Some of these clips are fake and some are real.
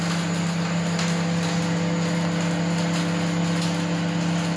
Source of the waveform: real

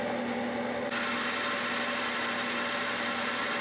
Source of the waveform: real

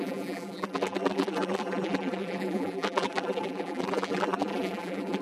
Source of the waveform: fake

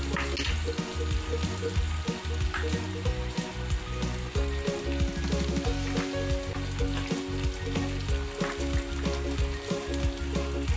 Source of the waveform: real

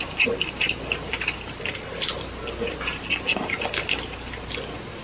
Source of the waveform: real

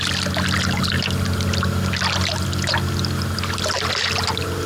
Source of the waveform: real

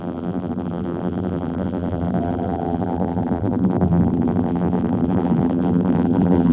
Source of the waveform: fake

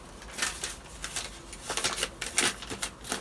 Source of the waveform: real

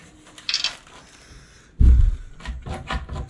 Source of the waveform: real